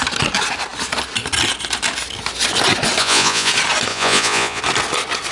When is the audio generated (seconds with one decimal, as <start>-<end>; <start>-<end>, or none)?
3.0-3.5; 3.9-4.6